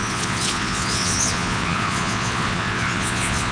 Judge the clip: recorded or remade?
remade